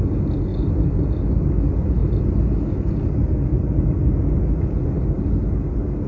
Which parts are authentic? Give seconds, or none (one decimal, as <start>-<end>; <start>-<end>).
0.0-6.1